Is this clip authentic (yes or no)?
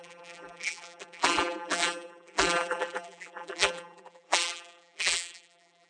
no